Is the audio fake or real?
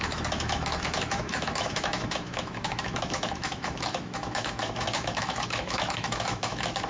fake